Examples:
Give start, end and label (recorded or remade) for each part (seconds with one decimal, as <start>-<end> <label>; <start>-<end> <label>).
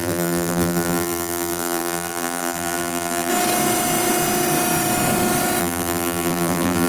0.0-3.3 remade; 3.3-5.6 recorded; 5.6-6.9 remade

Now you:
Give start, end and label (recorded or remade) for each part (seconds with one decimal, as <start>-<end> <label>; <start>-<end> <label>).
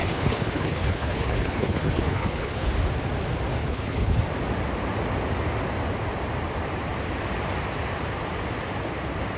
0.0-2.7 remade; 2.7-3.6 recorded; 3.6-4.2 remade; 4.2-9.4 recorded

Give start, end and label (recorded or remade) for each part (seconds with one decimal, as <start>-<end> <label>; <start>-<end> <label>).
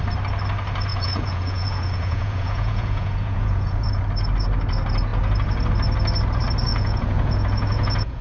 0.0-0.9 recorded; 0.9-4.0 remade; 4.0-6.7 recorded; 6.7-8.2 remade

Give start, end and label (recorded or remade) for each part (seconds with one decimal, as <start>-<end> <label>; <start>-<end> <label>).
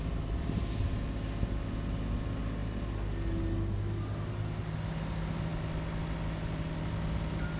0.0-7.6 recorded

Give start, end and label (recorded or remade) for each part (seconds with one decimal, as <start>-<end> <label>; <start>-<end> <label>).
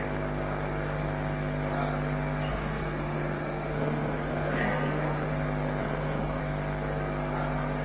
0.0-2.5 recorded; 2.5-5.3 remade; 5.3-5.8 recorded; 5.8-6.4 remade; 6.4-7.8 recorded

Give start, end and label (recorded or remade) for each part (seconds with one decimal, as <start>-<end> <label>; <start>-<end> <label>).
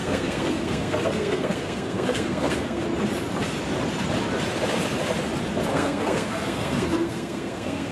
0.0-2.8 remade; 2.8-5.7 recorded; 5.7-7.9 remade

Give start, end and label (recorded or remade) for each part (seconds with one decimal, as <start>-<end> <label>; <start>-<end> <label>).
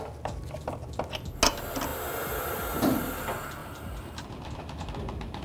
0.0-3.6 recorded; 3.6-4.8 remade; 4.8-5.4 recorded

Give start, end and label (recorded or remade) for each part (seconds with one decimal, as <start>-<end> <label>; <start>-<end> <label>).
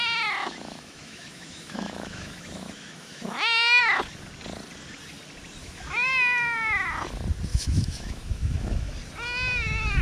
0.0-0.4 recorded; 0.4-3.8 remade; 3.8-5.6 recorded; 5.6-6.1 remade; 6.1-7.5 recorded; 7.5-8.9 remade; 8.9-10.0 recorded